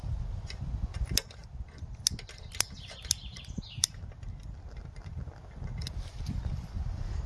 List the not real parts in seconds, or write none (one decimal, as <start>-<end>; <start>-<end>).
3.3-4.0